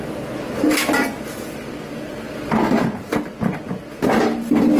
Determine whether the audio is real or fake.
fake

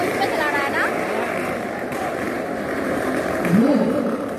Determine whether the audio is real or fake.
fake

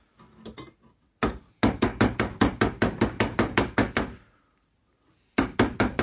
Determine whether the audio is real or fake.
real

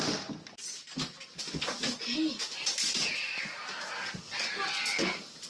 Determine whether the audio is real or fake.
real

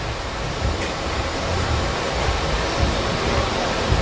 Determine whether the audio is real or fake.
fake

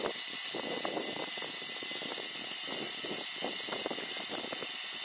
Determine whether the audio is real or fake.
real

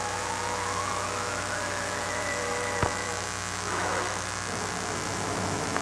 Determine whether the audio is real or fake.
fake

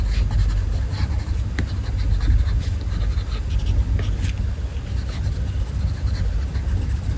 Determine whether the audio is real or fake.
real